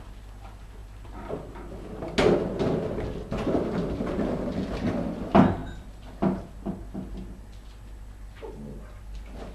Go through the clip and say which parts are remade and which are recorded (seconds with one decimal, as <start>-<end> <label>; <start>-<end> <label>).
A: 0.0-9.5 recorded